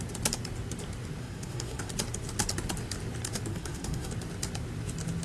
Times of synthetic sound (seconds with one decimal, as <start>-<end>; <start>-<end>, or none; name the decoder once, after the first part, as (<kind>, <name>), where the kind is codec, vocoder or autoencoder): 1.2-1.9 (codec, SNAC); 3.5-4.1